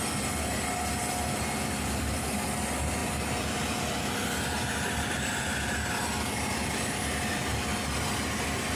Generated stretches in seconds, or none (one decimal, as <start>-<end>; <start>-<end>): none

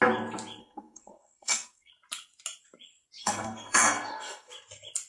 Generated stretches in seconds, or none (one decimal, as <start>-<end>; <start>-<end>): 0.6-1.9; 3.2-4.5

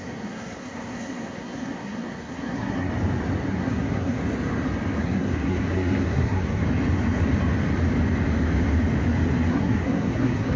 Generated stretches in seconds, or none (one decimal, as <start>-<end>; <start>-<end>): 0.0-2.9; 3.5-4.2; 5.0-6.6; 9.5-10.6

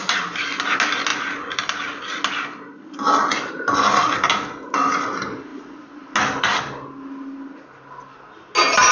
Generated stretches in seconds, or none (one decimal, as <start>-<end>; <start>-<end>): none

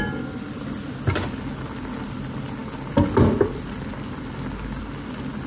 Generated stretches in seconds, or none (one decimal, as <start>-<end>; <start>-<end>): none

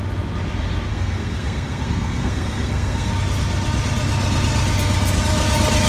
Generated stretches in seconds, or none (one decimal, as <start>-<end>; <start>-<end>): 0.9-3.1